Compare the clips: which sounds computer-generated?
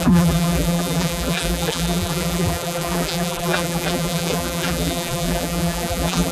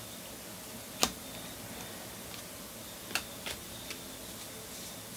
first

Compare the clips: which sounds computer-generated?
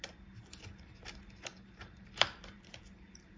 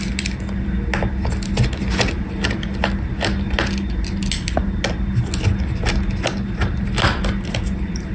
first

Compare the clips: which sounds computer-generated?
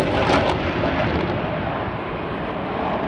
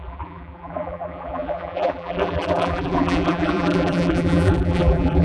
second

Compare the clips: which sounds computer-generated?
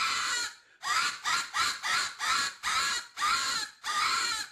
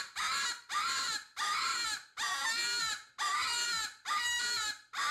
first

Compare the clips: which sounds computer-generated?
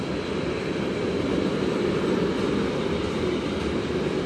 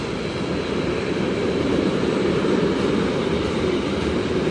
second